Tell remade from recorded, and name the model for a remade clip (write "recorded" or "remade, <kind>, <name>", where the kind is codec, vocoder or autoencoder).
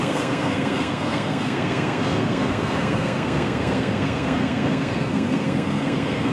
remade, codec, SNAC